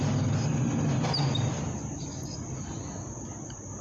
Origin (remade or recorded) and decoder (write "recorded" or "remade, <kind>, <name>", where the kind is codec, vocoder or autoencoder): remade, vocoder, BigVGAN v2